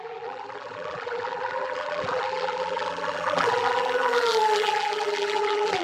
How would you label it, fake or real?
fake